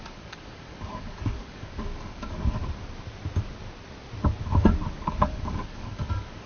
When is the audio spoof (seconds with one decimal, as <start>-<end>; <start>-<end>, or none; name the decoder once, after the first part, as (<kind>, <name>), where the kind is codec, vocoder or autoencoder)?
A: 0.0-2.6 (codec, DAC); 5.0-6.5